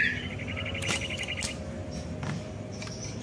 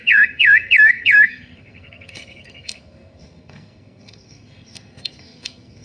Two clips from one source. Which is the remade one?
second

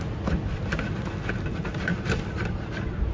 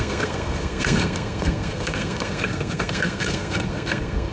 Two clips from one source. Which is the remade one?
second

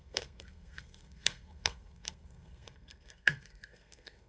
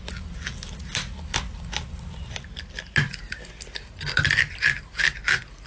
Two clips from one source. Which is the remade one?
first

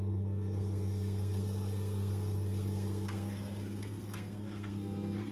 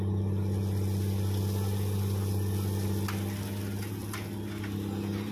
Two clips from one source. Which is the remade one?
first